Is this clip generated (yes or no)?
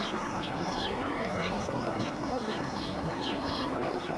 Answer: yes